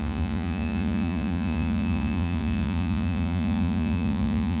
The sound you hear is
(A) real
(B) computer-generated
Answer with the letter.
B